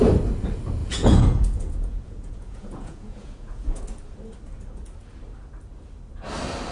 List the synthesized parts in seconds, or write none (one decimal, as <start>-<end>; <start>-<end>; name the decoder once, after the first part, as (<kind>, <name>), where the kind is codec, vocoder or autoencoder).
0.8-3.8 (vocoder, Vocos)